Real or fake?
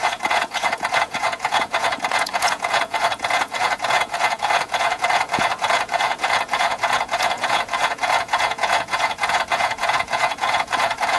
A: fake